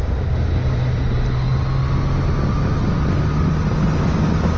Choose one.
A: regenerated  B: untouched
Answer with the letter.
B